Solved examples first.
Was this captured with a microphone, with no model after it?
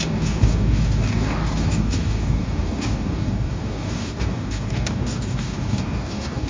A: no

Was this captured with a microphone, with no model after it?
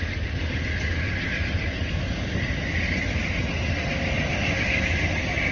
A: yes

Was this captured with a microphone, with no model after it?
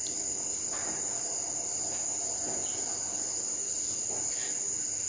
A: yes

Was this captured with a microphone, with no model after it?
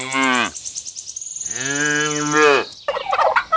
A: yes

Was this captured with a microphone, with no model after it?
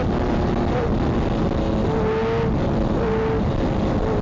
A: yes